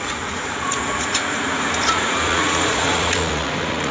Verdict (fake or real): fake